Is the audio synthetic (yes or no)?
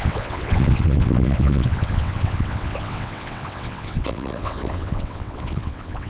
yes